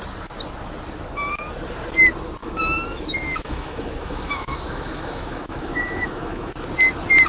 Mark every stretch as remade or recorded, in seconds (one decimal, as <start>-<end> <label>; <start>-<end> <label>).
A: 0.0-2.4 recorded; 2.4-6.5 remade; 6.5-7.3 recorded